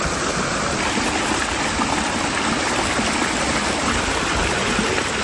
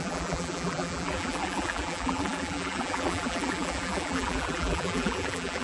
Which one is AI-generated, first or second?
second